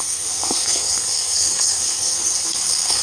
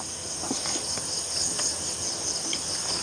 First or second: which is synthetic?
first